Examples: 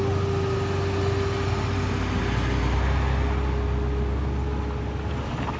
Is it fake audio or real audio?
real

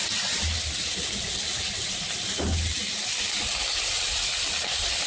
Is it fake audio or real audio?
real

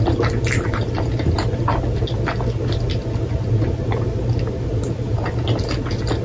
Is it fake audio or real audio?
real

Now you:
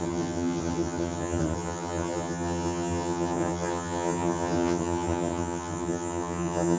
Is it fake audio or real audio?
fake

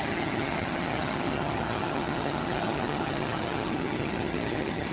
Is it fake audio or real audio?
fake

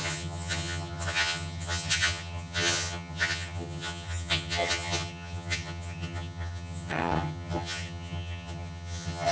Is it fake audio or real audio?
fake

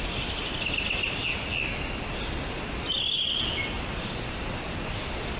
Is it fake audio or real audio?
real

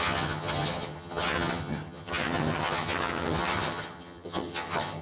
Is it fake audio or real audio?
fake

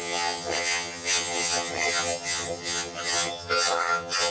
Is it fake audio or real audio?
fake